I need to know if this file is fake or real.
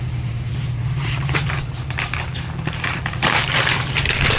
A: fake